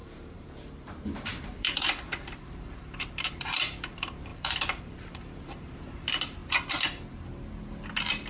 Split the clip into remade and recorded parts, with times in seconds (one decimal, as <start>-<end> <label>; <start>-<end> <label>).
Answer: 0.0-6.4 remade; 6.4-8.3 recorded